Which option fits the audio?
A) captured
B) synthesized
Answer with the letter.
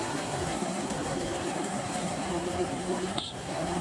B